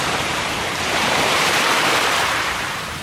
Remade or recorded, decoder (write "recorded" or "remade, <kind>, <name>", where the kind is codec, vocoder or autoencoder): remade, vocoder, BigVGAN v2